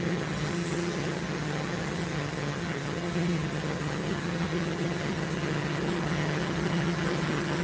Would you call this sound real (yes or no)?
no